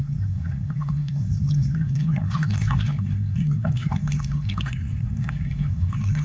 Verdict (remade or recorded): remade